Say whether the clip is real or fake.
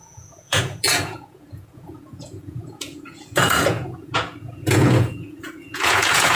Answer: fake